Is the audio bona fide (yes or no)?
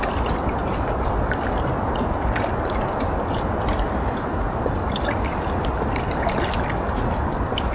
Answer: yes